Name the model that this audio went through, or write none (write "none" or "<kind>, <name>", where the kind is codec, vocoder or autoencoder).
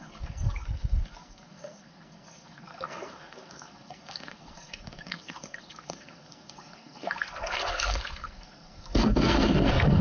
codec, SNAC